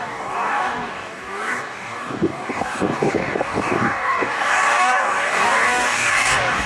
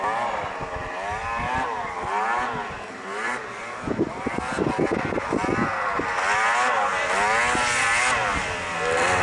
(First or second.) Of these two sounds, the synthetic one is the first